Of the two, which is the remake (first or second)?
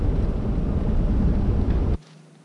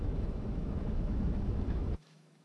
second